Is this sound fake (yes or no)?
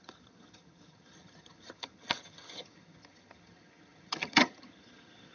yes